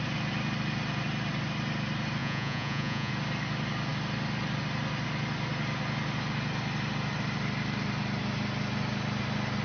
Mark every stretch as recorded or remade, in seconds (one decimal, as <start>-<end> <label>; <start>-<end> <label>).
0.0-2.2 recorded; 2.2-3.1 remade; 3.1-9.6 recorded